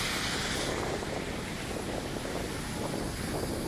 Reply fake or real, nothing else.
real